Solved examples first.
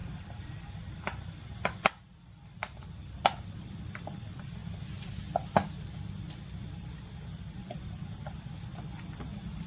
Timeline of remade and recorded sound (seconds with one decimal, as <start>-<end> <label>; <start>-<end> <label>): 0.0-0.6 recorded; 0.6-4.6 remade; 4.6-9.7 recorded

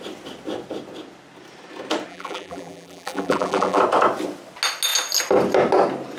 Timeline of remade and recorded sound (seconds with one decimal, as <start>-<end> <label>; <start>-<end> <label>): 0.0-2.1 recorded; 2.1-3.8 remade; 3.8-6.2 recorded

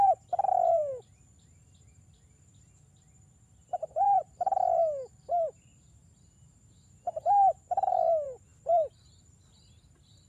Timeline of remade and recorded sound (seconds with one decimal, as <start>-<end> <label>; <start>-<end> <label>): 0.0-5.7 remade; 5.7-7.9 recorded; 7.9-10.3 remade